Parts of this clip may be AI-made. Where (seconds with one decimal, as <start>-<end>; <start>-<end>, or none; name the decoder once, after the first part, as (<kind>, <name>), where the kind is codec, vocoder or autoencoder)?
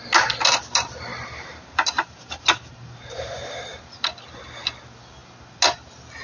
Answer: 1.1-4.1 (vocoder, BigVGAN v2)